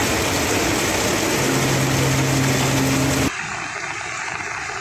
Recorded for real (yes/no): yes